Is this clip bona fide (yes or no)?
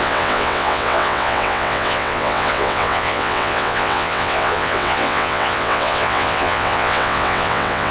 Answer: no